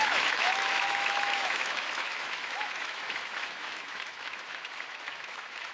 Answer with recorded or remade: remade